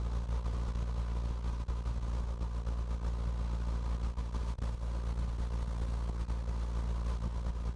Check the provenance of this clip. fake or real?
real